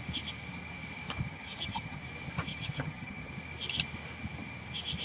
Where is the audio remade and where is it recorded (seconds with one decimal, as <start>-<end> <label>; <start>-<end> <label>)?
0.0-1.3 recorded; 1.3-2.0 remade; 2.0-2.5 recorded; 2.5-3.3 remade; 3.3-5.0 recorded